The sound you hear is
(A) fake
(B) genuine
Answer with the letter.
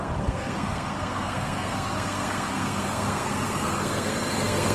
A